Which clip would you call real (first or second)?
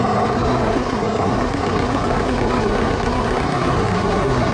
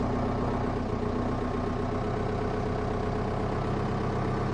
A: second